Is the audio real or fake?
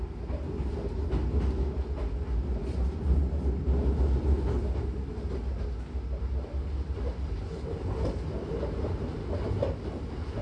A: real